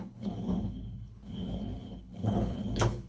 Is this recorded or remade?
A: remade